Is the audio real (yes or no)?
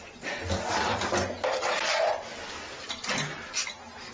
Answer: yes